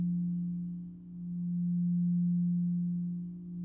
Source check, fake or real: real